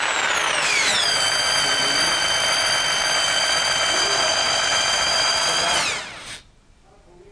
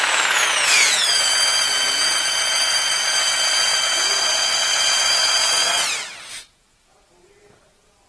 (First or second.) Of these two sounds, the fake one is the second